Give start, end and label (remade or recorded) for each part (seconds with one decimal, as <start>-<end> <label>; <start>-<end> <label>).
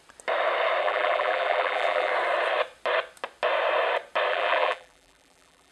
0.0-0.8 recorded; 0.8-2.1 remade; 2.1-4.3 recorded; 4.3-5.7 remade